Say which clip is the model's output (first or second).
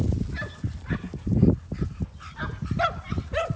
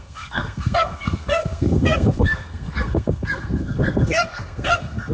second